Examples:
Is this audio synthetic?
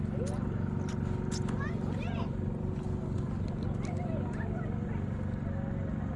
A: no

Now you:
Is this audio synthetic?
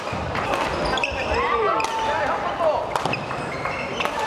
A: no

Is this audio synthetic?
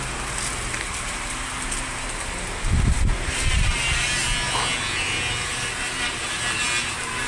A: no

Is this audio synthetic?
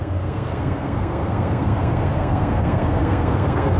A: yes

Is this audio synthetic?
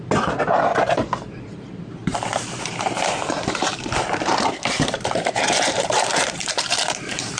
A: yes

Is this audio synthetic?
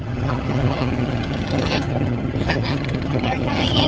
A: yes